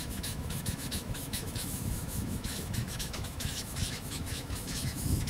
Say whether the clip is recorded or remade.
remade